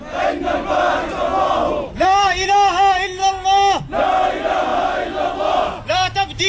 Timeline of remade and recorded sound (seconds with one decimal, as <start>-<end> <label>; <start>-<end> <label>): 0.0-6.5 recorded